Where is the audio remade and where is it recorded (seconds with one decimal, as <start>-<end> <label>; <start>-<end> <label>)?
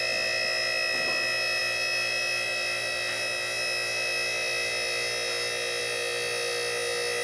0.0-7.2 recorded